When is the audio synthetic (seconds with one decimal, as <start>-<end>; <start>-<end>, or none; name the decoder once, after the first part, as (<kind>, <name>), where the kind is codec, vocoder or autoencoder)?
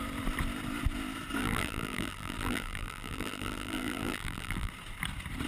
1.4-4.7 (vocoder, BigVGAN v2)